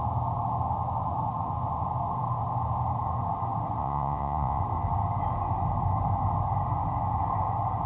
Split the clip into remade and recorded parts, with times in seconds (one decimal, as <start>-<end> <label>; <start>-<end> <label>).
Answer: 0.0-3.8 recorded; 3.8-4.6 remade; 4.6-7.9 recorded